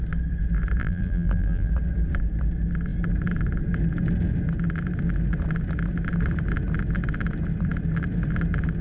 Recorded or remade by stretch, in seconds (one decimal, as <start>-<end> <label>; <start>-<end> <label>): 0.0-0.8 recorded; 0.8-1.7 remade; 1.7-8.8 recorded